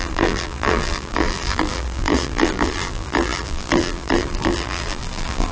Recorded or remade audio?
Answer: remade